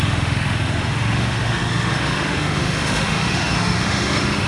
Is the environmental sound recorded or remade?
remade